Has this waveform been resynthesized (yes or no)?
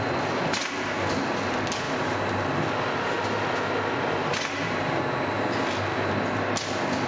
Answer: no